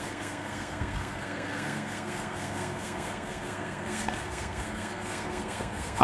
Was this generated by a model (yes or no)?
yes